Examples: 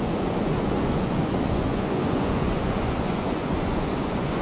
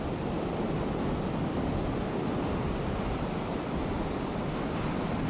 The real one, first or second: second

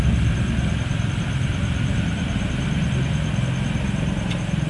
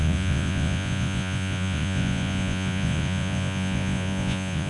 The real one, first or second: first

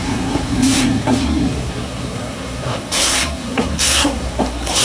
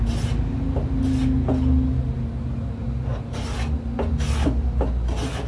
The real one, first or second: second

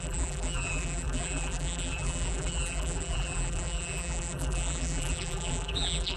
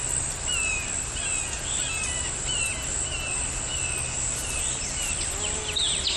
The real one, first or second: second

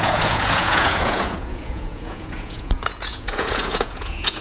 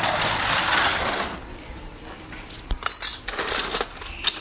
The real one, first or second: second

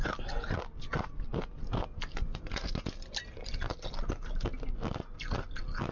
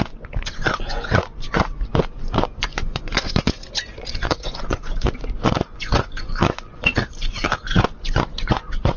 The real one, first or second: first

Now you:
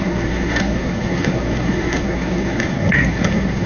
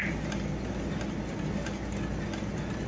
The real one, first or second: second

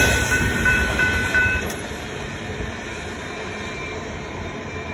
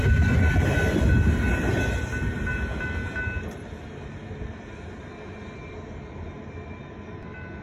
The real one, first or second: second